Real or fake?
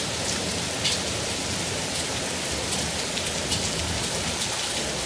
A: real